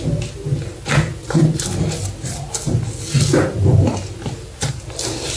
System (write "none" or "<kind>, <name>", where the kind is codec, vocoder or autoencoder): none